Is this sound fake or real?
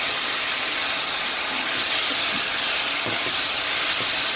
real